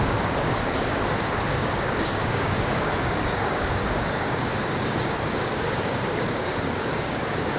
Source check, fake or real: fake